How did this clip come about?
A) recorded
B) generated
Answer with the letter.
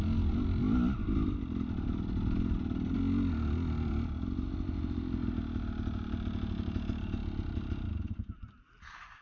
A